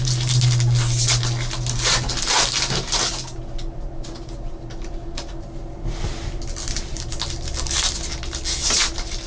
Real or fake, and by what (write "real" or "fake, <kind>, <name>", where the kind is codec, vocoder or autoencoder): real